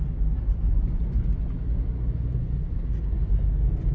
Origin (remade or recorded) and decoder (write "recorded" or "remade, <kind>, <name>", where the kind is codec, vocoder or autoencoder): recorded